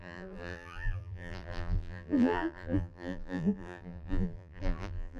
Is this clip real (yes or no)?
no